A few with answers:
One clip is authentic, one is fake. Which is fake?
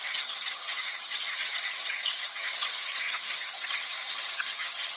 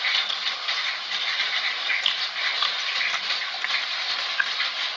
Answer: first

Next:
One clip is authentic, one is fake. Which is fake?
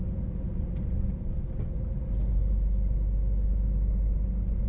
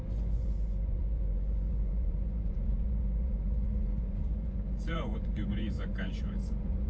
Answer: second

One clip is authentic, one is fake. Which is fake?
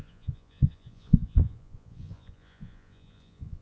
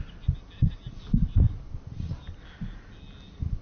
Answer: first